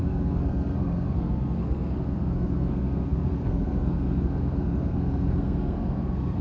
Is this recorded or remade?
remade